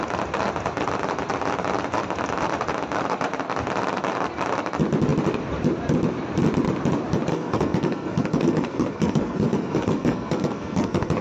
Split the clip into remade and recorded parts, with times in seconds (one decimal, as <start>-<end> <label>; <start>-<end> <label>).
0.0-7.3 recorded; 7.3-11.2 remade